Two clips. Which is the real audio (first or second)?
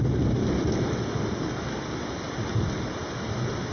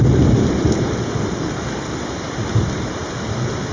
first